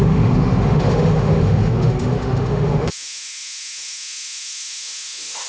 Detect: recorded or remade remade